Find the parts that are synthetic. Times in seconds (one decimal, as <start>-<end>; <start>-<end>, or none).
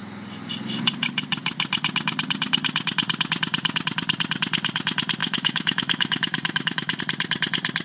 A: 5.2-7.0